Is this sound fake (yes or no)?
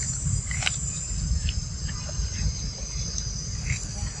yes